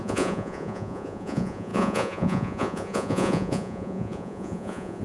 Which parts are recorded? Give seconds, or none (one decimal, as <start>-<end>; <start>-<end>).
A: none